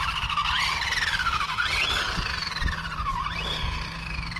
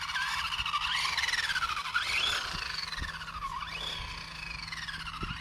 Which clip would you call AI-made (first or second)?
first